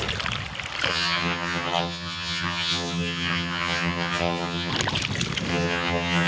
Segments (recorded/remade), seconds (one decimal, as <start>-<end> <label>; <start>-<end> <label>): 0.0-0.9 recorded; 0.9-4.7 remade; 4.7-5.5 recorded; 5.5-6.3 remade